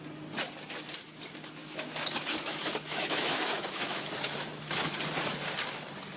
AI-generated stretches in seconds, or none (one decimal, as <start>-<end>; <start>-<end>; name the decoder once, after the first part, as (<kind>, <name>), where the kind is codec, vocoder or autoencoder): 1.6-5.0 (autoencoder, DAC-VAE)